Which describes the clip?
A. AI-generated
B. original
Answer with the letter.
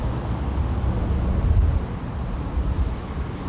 B